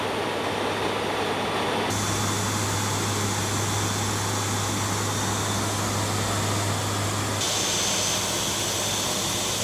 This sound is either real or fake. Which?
real